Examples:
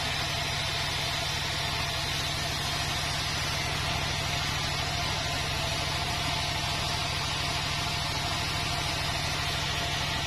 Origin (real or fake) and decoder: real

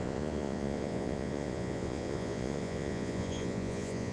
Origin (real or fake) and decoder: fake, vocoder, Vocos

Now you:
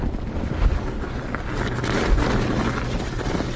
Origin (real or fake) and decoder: real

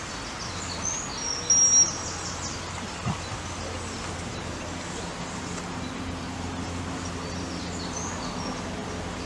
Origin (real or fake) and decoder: real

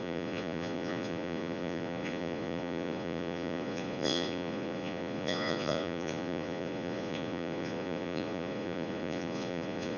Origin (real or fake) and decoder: fake, vocoder, Vocos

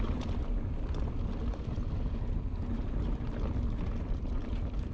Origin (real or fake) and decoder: real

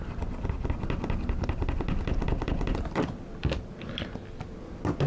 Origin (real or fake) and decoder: real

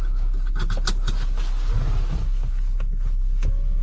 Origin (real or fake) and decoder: real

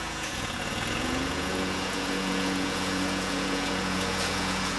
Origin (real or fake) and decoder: fake, vocoder, Vocos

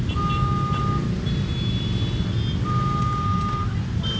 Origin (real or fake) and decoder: real